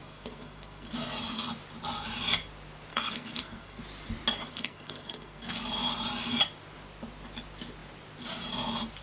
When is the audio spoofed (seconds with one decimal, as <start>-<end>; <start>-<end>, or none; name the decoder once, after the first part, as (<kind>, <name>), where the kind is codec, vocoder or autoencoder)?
0.0-0.9 (codec, SNAC); 2.9-3.8; 4.5-5.6